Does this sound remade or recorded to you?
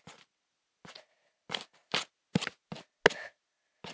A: recorded